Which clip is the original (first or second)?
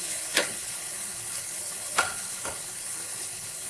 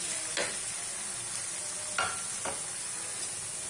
second